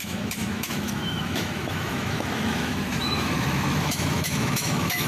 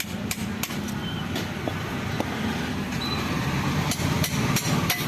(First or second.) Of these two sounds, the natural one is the second